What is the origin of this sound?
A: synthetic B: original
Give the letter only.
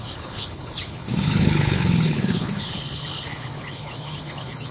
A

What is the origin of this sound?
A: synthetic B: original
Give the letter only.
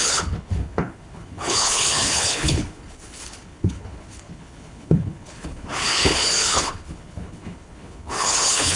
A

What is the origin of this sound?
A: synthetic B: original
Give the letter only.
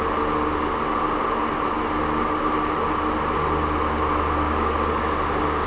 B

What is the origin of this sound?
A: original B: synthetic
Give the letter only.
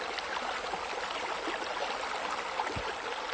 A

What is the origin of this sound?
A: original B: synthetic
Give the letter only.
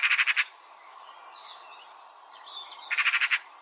A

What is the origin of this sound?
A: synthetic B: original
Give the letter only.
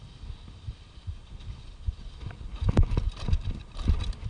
B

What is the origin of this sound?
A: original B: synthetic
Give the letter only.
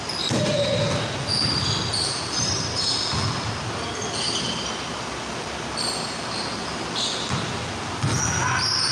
A